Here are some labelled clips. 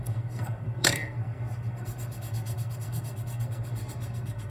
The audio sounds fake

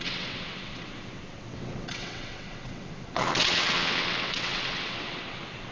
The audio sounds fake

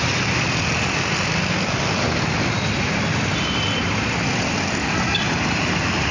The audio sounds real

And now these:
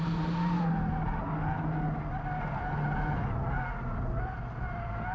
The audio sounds real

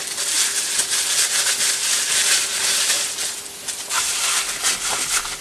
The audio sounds real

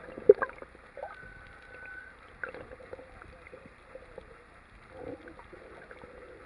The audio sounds real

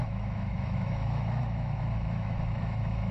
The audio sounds fake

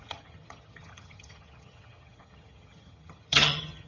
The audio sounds fake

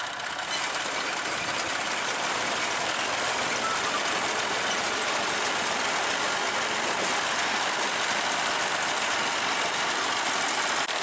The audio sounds real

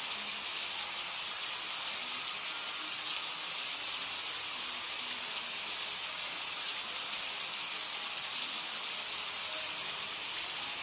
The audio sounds real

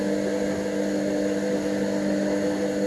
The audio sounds real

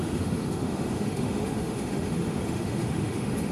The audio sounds fake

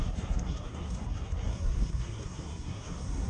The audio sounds fake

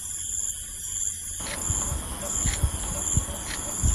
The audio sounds real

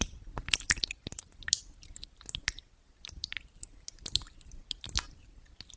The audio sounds real